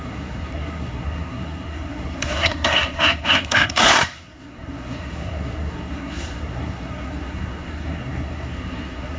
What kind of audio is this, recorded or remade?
remade